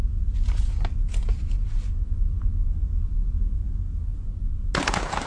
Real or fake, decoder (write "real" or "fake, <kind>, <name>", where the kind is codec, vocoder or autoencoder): real